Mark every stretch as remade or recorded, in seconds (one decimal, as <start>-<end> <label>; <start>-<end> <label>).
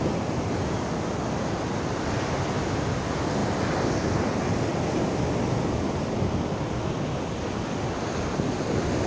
0.0-9.1 recorded